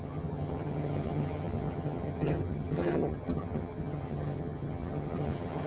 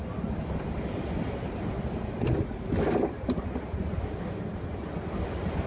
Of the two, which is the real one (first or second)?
second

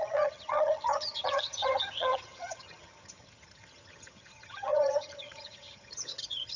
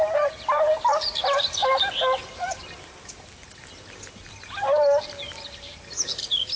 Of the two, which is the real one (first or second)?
second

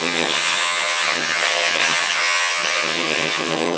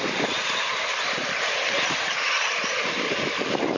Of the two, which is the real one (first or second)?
second